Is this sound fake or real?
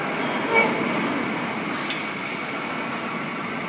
real